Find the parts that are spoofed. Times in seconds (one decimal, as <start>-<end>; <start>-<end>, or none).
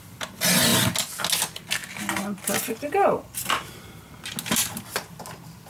none